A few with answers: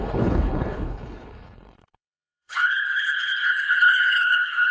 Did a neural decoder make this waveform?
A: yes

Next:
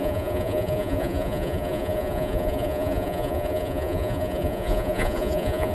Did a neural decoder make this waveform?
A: yes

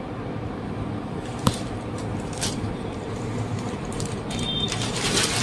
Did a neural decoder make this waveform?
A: yes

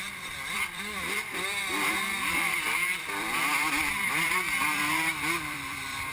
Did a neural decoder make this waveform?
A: yes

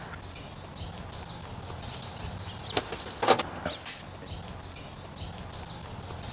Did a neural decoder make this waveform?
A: no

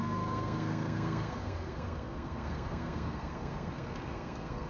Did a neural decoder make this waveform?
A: yes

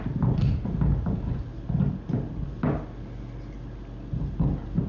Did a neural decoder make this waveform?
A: no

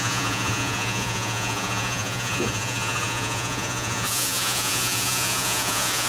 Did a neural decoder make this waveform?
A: yes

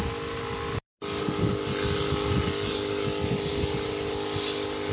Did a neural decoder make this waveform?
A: no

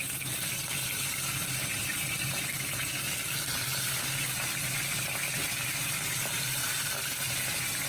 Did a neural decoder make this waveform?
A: no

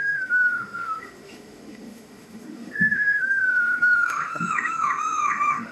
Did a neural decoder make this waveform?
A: yes